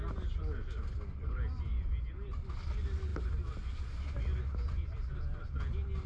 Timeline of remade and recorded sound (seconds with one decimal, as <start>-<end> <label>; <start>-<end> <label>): 0.0-6.1 recorded